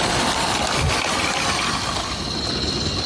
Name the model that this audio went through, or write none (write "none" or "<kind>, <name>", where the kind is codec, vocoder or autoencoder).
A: none